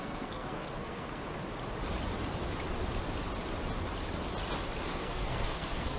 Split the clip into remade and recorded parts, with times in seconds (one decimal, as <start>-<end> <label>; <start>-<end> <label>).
0.0-1.2 remade; 1.2-4.8 recorded; 4.8-6.0 remade